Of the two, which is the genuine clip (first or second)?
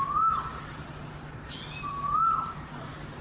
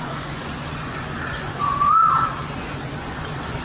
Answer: first